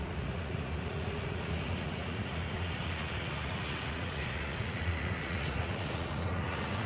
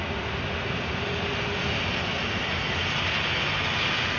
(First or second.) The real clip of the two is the second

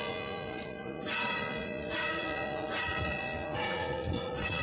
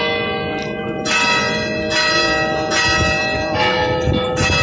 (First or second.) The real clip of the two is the second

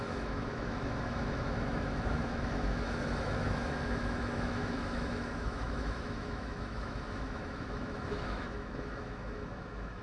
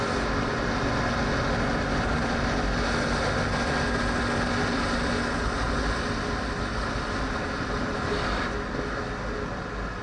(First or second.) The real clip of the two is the second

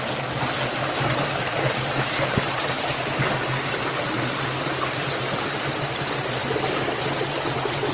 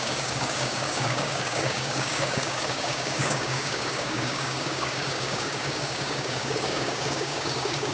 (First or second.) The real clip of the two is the first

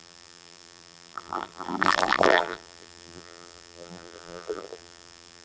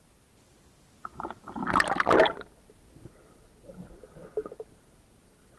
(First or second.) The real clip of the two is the second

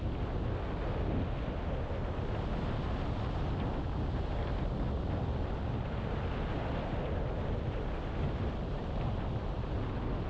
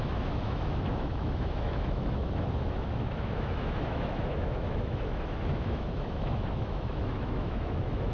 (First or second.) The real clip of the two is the first